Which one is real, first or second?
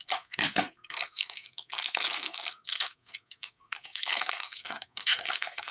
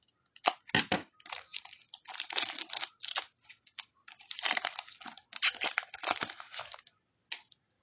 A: second